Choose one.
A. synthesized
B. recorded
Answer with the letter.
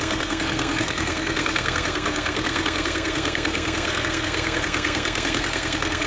A